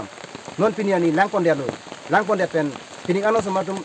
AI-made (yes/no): no